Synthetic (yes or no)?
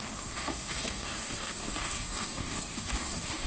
yes